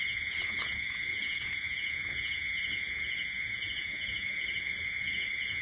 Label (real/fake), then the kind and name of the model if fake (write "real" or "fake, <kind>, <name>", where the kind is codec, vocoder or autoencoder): fake, vocoder, Vocos